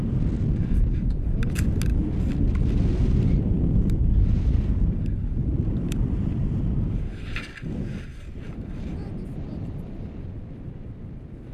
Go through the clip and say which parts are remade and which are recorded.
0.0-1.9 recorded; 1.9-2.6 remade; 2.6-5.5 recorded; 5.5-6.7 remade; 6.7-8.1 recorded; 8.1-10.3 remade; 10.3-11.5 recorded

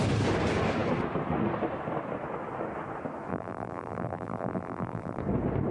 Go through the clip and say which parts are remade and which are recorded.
0.0-3.3 recorded; 3.3-5.2 remade; 5.2-5.7 recorded

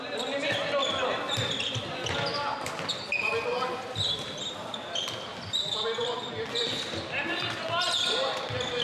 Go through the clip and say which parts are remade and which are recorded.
0.0-0.8 recorded; 0.8-2.1 remade; 2.1-5.3 recorded; 5.3-6.3 remade; 6.3-8.8 recorded